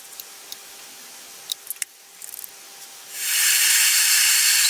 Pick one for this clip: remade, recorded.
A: recorded